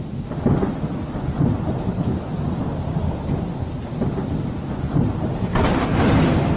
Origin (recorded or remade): recorded